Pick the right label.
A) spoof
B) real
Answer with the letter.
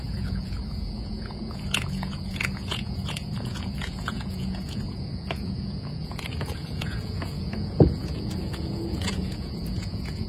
A